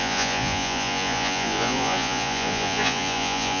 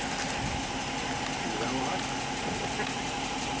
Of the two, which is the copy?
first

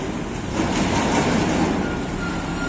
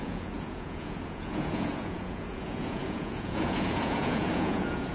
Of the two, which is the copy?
second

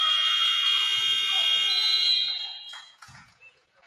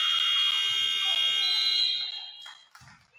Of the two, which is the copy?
first